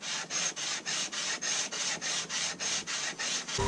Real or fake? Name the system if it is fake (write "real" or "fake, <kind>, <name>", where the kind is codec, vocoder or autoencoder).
fake, vocoder, BigVGAN v2